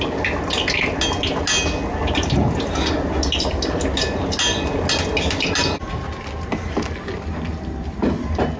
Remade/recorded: recorded